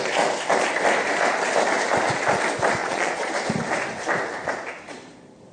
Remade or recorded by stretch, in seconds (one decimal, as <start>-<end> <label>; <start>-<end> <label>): 0.0-2.8 recorded; 2.8-3.3 remade; 3.3-5.5 recorded